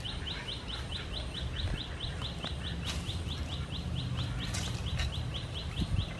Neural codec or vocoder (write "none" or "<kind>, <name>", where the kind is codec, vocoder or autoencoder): vocoder, BigVGAN v2